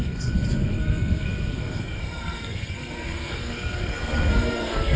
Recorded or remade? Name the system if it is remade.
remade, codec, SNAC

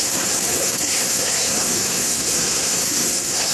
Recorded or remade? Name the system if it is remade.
remade, codec, SNAC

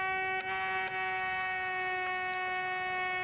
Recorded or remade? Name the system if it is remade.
recorded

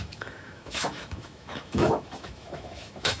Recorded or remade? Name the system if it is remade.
remade, autoencoder, DAC-VAE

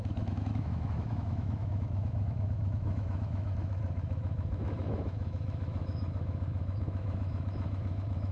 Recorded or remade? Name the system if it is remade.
remade, autoencoder, DAC-VAE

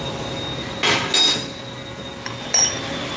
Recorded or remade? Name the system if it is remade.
recorded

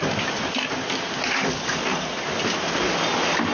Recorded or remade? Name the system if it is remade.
recorded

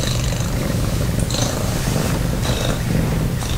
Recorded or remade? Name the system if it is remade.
remade, vocoder, BigVGAN v2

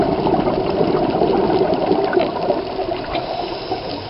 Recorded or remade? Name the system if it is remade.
recorded